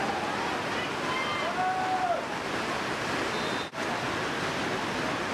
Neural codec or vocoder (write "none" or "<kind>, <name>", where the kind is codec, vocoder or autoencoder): none